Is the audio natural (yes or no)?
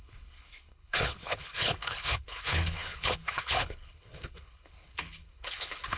no